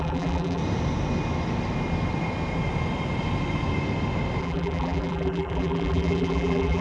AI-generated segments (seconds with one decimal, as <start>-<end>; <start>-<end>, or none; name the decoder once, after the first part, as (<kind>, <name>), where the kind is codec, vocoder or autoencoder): 0.0-0.6 (vocoder, BigVGAN v2); 4.4-6.8